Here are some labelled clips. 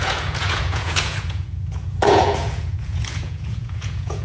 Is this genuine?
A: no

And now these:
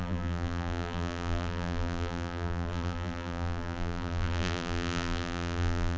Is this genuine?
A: no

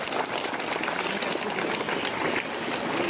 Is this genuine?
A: yes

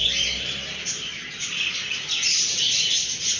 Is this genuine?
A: yes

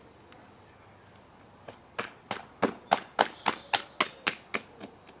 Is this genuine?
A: yes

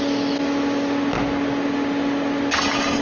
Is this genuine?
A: yes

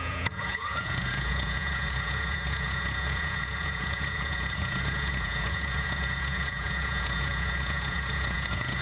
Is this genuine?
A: no